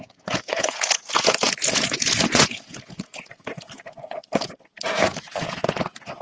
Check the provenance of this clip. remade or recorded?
remade